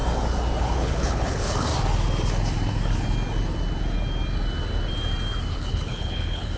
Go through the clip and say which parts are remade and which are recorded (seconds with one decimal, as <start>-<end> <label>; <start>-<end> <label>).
0.0-0.6 recorded; 0.6-1.7 remade; 1.7-5.5 recorded; 5.5-6.6 remade